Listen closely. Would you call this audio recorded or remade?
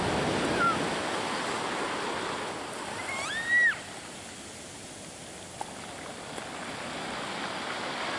recorded